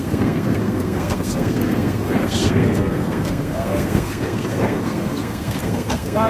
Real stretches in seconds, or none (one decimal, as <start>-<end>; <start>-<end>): none